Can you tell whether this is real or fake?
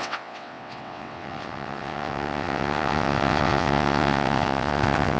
fake